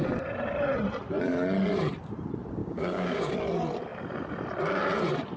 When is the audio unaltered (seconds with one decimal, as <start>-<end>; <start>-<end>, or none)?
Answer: 0.0-2.6; 3.3-5.4